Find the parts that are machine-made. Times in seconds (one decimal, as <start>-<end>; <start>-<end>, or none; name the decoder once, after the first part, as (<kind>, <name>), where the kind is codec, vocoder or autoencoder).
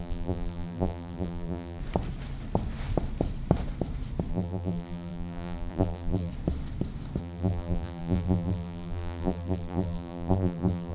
0.0-1.8 (vocoder, BigVGAN v2); 4.3-6.3; 7.2-10.9